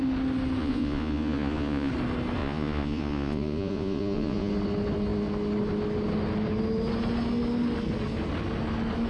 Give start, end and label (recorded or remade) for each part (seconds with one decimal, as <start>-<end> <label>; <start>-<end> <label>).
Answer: 0.0-0.6 recorded; 0.6-1.9 remade; 1.9-2.4 recorded; 2.4-4.5 remade; 4.5-9.1 recorded